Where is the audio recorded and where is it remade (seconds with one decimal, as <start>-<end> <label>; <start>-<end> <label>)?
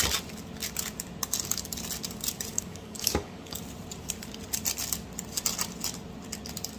0.0-2.5 recorded; 2.5-3.6 remade; 3.6-6.8 recorded